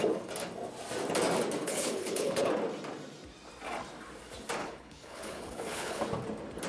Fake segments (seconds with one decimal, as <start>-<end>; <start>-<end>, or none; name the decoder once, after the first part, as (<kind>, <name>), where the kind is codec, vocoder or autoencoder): 1.6-2.5 (codec, HILCodec); 4.6-6.0